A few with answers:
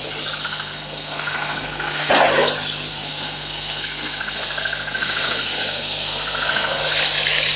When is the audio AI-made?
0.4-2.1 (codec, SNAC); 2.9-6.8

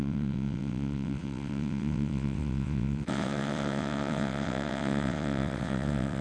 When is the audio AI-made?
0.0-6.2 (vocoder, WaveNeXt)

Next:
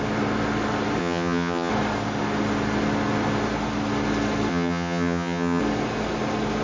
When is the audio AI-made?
1.0-1.7 (vocoder, HiFi-GAN); 4.5-5.6

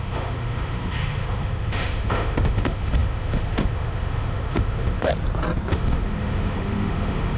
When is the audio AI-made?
0.0-5.1 (autoencoder, DAC-VAE); 5.7-7.4

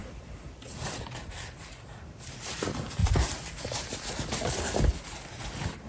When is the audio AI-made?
none

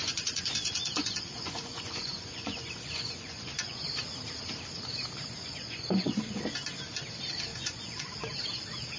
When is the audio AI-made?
0.0-3.8 (vocoder, Vocos); 5.4-6.4; 7.5-8.1

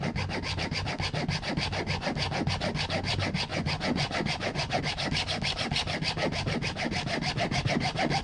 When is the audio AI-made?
3.5-4.8 (vocoder, Vocos)

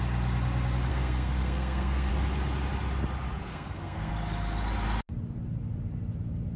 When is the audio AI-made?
0.9-2.1 (codec, SNAC); 3.5-4.1